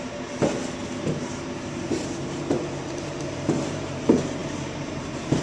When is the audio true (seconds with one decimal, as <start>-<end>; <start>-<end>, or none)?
0.0-0.8; 4.0-4.4